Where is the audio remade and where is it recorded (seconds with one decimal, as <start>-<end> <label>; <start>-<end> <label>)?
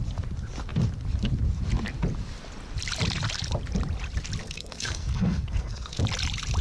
0.0-4.4 recorded; 4.4-6.0 remade; 6.0-6.6 recorded